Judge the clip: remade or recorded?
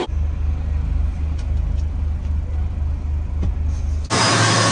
recorded